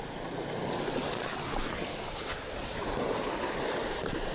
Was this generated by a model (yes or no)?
yes